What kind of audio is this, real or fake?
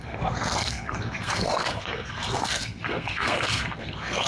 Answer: fake